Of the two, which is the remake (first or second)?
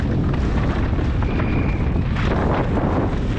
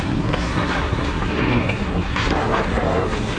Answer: second